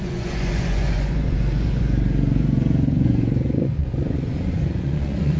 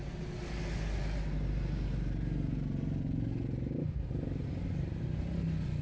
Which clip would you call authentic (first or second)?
second